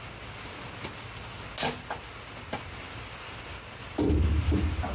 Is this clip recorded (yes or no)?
yes